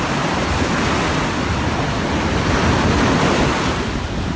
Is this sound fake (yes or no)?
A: no